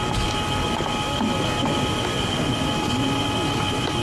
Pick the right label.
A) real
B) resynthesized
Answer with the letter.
A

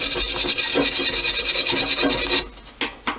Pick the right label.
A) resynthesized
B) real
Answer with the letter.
B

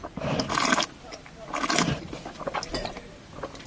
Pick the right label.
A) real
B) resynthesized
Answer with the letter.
A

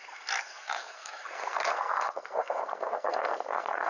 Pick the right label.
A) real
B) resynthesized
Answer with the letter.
B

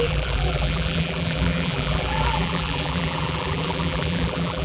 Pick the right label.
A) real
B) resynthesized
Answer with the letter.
B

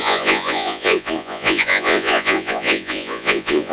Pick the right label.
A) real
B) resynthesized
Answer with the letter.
B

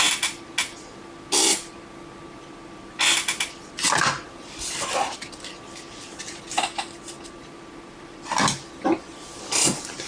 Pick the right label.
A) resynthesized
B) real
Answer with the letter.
B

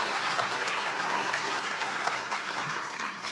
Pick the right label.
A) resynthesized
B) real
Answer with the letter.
A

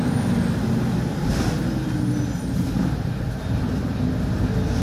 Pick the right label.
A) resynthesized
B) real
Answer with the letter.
B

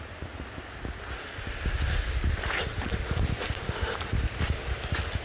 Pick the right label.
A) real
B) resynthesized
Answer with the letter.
A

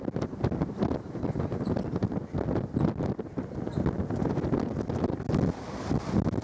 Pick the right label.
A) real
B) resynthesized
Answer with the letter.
A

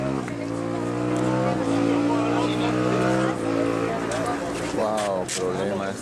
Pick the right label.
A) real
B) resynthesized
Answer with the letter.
A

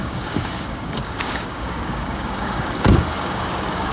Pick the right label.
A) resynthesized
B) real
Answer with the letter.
A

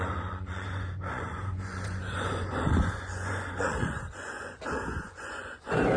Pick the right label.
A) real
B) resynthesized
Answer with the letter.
B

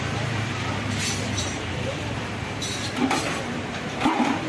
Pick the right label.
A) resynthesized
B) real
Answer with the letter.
A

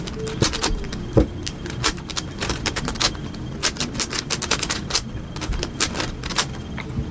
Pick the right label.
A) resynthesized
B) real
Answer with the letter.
B